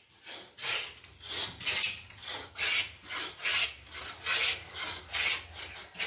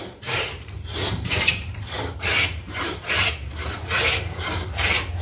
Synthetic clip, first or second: second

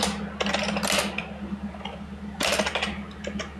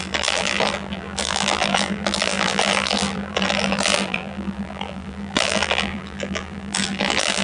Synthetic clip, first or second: second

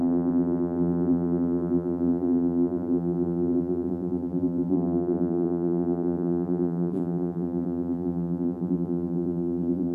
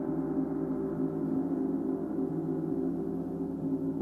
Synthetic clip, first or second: first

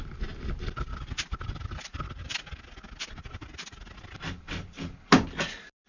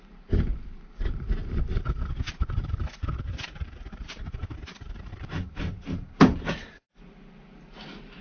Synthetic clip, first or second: second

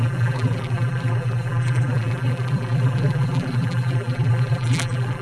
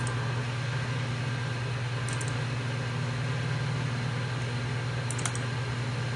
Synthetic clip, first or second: first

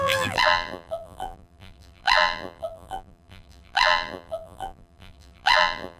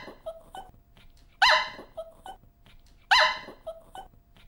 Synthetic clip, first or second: first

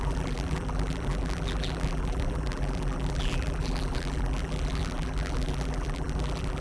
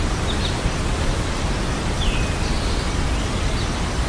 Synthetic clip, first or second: first